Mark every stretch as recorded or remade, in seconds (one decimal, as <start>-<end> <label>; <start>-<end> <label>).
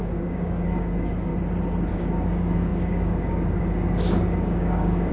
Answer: 0.0-1.3 remade; 1.3-1.9 recorded; 1.9-5.1 remade